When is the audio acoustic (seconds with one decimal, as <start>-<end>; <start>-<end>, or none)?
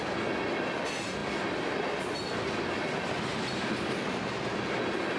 0.0-5.2